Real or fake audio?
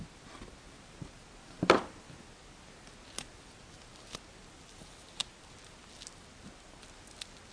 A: real